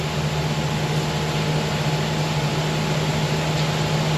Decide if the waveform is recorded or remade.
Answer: recorded